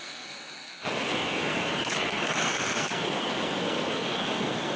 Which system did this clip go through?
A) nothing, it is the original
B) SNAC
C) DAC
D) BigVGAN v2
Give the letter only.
B